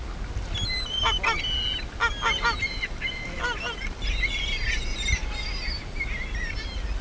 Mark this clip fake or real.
real